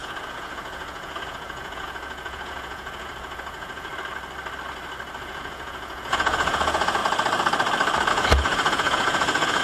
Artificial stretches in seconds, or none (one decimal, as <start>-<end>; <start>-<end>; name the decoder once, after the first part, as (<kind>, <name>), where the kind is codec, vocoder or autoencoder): 0.0-3.9 (vocoder, Vocos); 5.2-7.0; 8.1-9.6